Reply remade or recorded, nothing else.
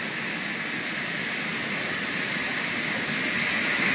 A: recorded